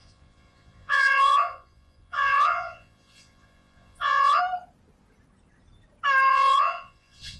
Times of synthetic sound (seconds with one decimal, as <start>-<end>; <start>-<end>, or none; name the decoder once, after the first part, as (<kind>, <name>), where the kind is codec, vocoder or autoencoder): 0.0-4.4 (vocoder, Vocos); 6.3-7.4